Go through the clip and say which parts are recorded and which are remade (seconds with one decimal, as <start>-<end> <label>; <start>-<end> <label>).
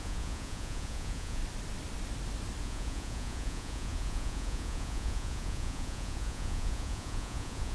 0.0-1.4 remade; 1.4-2.6 recorded; 2.6-7.7 remade